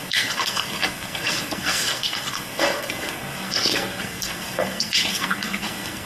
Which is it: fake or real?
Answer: fake